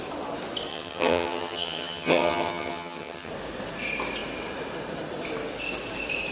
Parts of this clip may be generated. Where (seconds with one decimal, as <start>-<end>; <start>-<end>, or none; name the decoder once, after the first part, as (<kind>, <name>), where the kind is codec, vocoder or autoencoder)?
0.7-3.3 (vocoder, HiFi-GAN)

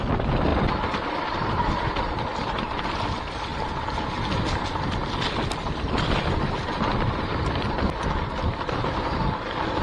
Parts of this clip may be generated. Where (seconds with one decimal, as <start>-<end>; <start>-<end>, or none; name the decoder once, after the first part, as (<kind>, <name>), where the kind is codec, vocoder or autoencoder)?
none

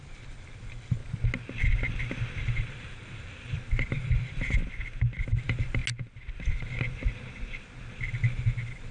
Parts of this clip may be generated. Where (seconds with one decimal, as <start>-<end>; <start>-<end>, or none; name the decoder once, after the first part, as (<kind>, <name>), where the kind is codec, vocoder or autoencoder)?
0.0-1.0 (vocoder, BigVGAN v2); 2.4-4.6; 5.2-5.8; 8.0-8.9

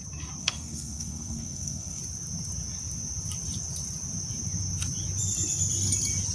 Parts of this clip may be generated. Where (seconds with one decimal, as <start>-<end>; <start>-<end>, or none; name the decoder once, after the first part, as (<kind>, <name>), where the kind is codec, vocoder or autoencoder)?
0.4-2.0 (codec, SNAC)

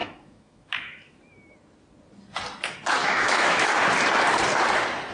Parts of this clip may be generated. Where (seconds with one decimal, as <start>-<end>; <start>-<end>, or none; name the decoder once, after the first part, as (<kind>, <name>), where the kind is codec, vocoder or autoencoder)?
0.0-1.2 (autoencoder, DAC-VAE); 3.0-3.7

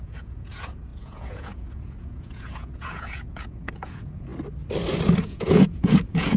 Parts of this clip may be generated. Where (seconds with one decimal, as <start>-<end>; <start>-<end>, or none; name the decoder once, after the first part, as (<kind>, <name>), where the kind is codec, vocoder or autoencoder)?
0.0-4.3 (vocoder, Vocos); 5.2-6.4

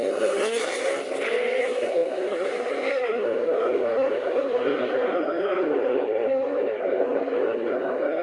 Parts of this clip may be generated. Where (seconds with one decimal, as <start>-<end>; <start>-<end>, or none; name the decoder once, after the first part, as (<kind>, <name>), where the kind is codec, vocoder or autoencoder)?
0.0-0.9 (codec, SNAC); 1.6-8.2